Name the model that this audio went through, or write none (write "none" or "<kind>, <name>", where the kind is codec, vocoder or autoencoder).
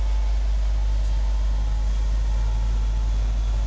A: none